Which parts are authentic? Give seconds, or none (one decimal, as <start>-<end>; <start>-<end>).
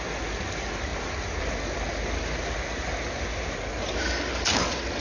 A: 0.0-5.0